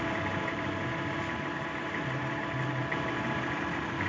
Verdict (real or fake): real